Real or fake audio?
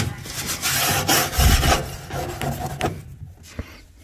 real